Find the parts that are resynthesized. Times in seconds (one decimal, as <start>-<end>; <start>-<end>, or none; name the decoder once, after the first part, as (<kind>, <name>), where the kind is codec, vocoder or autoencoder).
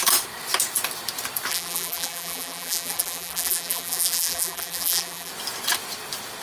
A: 1.5-5.3 (vocoder, BigVGAN v2)